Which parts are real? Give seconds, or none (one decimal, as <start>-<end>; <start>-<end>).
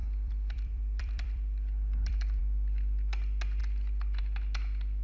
2.4-5.0